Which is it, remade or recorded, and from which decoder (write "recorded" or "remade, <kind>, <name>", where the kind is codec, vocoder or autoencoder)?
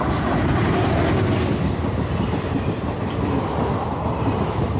recorded